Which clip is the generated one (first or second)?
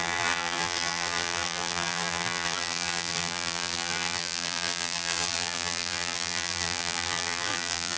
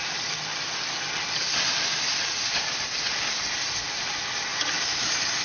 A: first